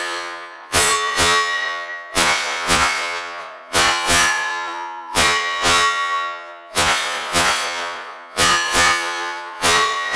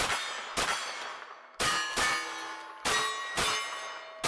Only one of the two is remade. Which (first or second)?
first